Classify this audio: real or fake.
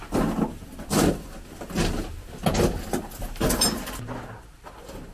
real